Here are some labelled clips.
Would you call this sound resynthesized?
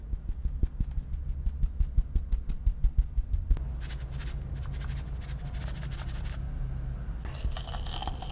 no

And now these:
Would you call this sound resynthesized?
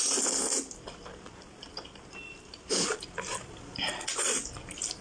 no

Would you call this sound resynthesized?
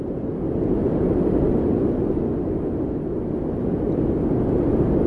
no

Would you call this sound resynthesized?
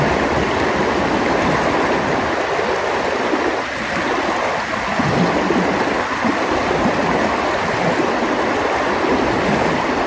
no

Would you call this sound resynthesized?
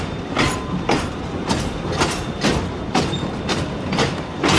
no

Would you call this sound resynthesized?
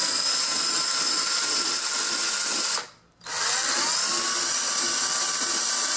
no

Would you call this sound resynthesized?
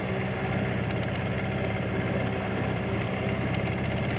no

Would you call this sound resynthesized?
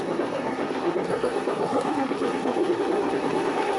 yes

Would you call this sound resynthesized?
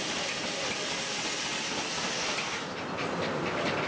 no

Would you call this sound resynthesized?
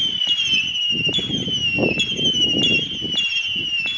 no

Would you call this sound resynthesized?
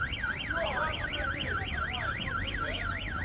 yes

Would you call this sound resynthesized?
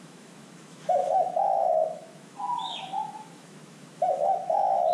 yes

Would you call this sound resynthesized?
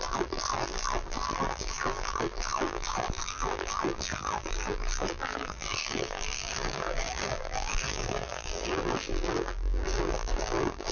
yes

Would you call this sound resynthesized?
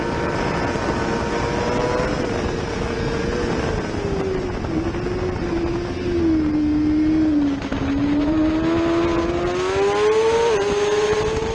no